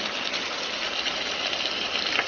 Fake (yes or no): no